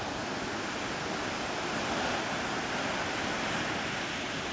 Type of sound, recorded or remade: recorded